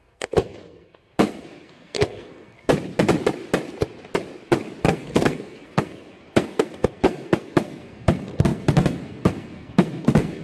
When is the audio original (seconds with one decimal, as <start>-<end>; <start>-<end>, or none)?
2.7-4.8